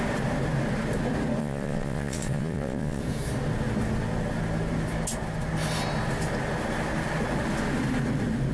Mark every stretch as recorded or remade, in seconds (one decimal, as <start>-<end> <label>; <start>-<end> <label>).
0.0-1.4 recorded; 1.4-3.0 remade; 3.0-8.5 recorded